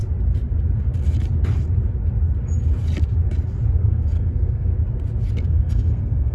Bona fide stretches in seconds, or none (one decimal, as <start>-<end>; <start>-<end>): 0.0-3.8; 4.7-5.5